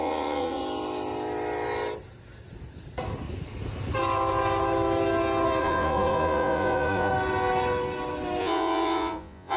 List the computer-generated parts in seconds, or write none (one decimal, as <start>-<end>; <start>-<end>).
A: 0.0-0.6; 5.6-7.1; 8.4-9.6